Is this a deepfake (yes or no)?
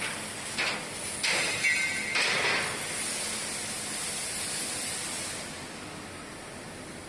no